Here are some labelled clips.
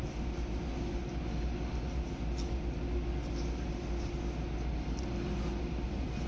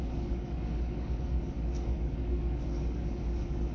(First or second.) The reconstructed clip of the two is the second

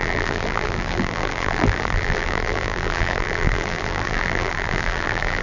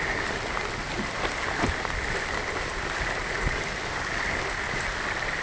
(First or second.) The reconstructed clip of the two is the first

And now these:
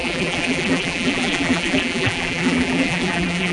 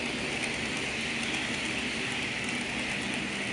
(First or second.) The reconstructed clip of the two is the first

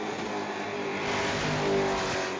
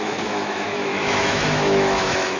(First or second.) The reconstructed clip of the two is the second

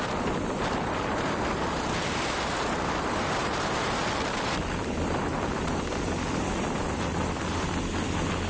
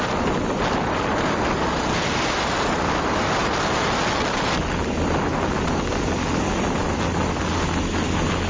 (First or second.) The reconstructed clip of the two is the first